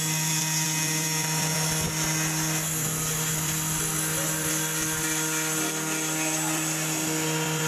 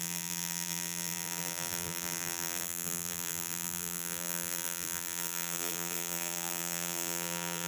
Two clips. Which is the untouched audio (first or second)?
first